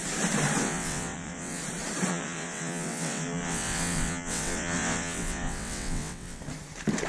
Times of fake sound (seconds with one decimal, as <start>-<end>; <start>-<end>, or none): 0.6-1.6; 2.1-6.4